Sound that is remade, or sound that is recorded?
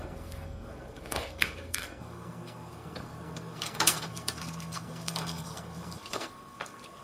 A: remade